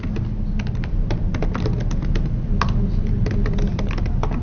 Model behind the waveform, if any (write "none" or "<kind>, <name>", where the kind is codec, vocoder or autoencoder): none